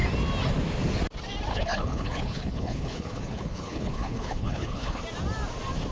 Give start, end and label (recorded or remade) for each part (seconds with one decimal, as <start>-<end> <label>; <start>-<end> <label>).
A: 0.0-1.5 recorded; 1.5-5.0 remade; 5.0-5.9 recorded